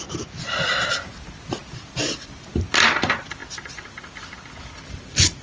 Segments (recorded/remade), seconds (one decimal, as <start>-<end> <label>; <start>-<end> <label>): 0.0-1.6 recorded; 1.6-2.5 remade; 2.5-3.4 recorded; 3.4-5.4 remade